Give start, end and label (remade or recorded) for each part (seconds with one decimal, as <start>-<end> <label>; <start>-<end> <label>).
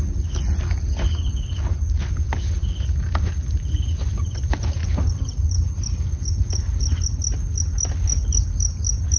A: 0.0-9.2 recorded